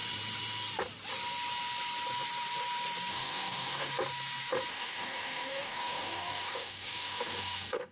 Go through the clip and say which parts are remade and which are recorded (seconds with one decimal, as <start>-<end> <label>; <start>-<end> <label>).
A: 0.0-3.1 recorded; 3.1-3.9 remade; 3.9-4.7 recorded; 4.7-7.9 remade